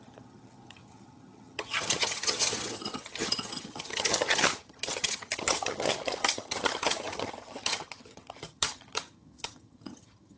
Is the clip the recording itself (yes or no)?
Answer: no